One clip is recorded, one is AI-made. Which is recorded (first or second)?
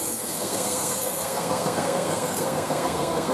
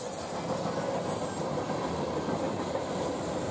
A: second